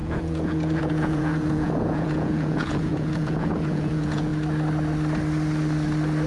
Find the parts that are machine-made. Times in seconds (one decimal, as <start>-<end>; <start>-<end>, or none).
0.0-4.3